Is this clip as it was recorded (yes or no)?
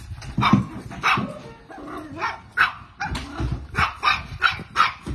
yes